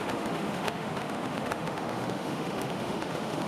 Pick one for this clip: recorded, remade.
remade